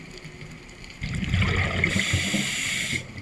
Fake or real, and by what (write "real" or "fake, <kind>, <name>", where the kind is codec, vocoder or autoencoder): real